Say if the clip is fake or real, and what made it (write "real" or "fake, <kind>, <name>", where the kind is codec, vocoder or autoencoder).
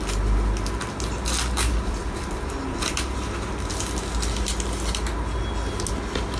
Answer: real